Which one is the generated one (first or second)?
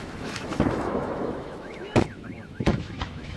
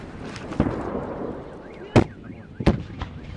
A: first